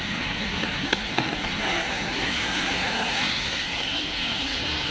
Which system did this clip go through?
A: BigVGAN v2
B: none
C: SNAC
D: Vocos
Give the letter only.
C